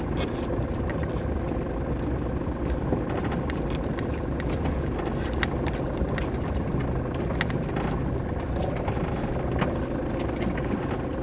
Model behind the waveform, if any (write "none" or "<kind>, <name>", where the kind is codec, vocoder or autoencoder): none